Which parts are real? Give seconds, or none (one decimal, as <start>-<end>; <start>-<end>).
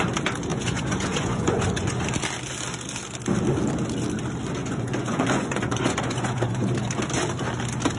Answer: 0.0-0.5; 2.0-4.6; 6.7-8.0